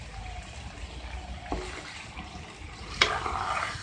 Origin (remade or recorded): remade